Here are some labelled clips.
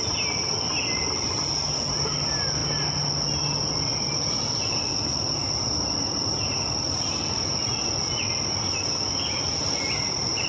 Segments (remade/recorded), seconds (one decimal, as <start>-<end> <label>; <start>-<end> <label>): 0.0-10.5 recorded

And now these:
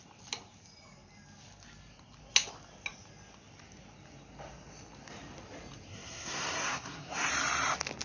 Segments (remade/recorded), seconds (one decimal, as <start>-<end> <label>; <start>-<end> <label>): 0.0-5.9 recorded; 5.9-7.3 remade; 7.3-8.0 recorded

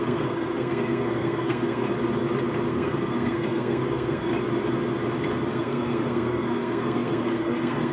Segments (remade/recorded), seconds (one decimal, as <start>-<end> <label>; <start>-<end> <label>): 0.0-1.9 remade; 1.9-2.7 recorded; 2.7-4.3 remade; 4.3-5.5 recorded; 5.5-7.9 remade

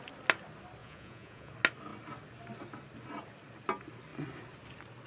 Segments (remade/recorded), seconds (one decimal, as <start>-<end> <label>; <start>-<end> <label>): 0.0-0.8 recorded; 0.8-1.5 remade; 1.5-5.1 recorded

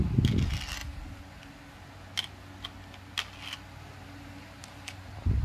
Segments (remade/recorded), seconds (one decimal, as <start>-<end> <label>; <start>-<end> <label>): 0.0-5.4 recorded

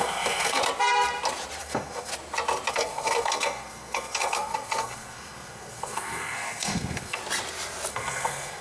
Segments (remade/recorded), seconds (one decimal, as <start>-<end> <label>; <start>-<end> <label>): 0.0-0.6 remade; 0.6-1.6 recorded; 1.6-2.1 remade; 2.1-2.7 recorded; 2.7-7.2 remade; 7.2-7.9 recorded; 7.9-8.6 remade